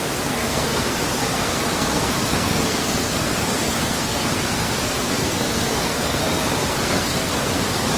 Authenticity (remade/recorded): remade